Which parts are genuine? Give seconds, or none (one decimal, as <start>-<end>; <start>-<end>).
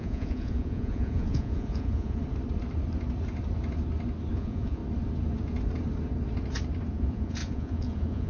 2.2-4.3; 4.8-6.9